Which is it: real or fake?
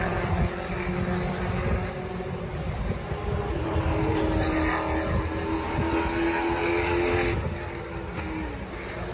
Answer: real